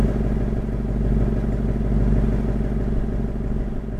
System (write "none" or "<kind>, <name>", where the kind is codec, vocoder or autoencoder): none